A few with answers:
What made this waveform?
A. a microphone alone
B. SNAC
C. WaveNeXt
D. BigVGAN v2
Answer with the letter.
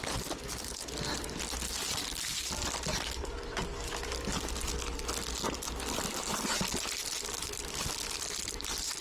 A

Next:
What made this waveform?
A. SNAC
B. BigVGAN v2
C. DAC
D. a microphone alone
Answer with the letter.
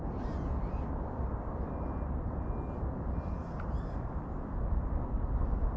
D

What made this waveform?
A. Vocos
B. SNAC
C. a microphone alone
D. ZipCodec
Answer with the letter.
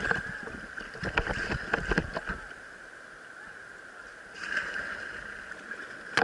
C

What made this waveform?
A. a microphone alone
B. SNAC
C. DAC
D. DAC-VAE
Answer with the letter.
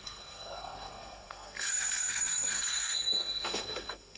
B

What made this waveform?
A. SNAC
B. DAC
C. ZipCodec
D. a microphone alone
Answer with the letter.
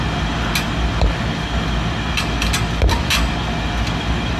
D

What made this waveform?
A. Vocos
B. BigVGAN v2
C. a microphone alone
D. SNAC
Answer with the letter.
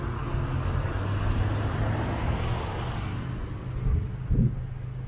C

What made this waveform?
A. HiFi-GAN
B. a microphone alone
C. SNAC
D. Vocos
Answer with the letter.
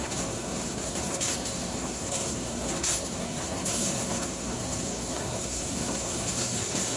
C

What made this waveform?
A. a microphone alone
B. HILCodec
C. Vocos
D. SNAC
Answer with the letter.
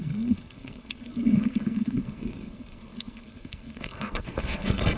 D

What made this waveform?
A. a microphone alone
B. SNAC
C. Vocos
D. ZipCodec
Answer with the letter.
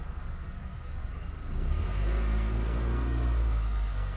B